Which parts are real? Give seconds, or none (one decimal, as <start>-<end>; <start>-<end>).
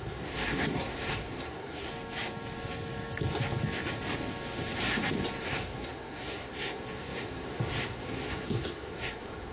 1.9-5.4